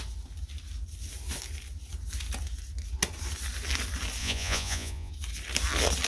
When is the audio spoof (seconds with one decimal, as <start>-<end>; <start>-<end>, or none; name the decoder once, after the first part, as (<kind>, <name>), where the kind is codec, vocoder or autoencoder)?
4.2-5.1 (vocoder, Vocos)